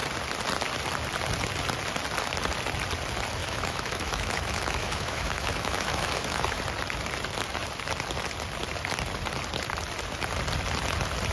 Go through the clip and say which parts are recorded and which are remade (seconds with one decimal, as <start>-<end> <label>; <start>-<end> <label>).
0.0-3.4 recorded; 3.4-6.6 remade; 6.6-11.3 recorded